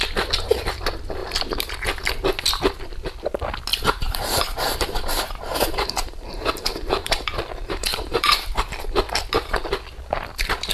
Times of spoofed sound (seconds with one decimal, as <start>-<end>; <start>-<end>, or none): 3.7-8.7